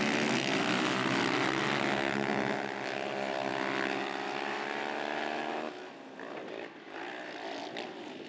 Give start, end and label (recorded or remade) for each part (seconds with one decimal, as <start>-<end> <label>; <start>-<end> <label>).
0.0-8.3 recorded